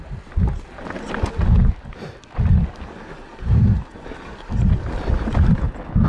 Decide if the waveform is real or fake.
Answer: real